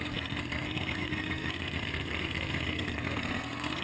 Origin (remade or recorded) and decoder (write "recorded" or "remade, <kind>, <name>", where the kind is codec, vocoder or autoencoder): remade, codec, SNAC